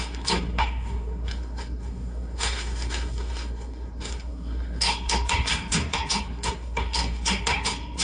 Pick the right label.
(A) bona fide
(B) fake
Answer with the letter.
B